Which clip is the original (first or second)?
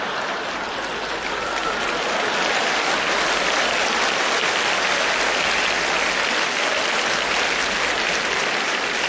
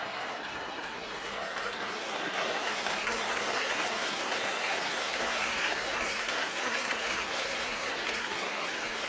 first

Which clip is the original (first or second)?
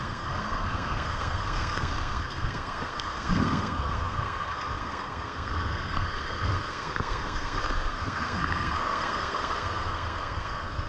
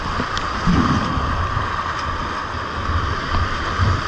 second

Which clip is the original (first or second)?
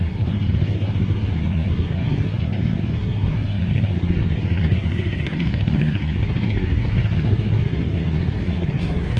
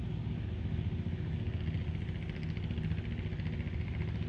second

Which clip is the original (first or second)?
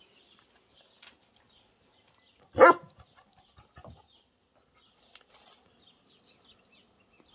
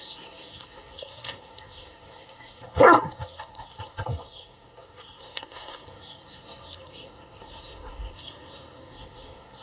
first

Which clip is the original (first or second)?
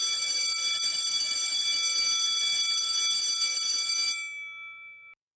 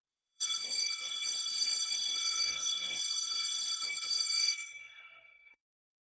first